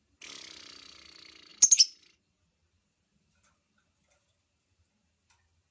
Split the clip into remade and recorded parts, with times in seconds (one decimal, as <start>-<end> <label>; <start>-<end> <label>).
0.0-5.7 recorded